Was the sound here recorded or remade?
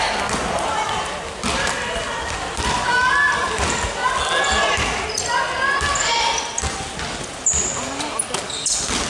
recorded